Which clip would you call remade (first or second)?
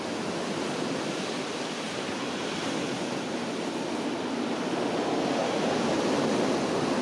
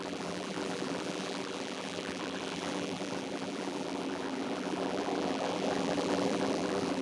second